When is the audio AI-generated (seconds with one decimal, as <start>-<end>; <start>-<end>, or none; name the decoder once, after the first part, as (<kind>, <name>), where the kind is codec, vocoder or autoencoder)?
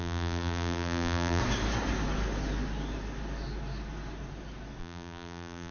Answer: 0.0-1.4 (vocoder, BigVGAN v2); 4.8-5.7